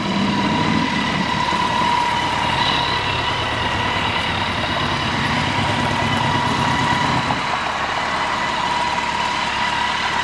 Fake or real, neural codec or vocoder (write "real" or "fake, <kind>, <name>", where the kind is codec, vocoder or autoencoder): real